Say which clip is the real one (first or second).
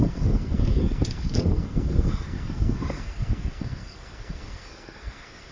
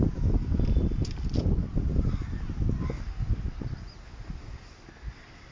second